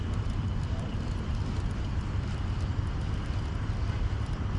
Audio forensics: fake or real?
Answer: real